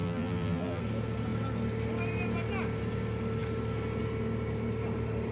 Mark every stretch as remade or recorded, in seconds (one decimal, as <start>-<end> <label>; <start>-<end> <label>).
0.0-0.8 remade; 0.8-5.3 recorded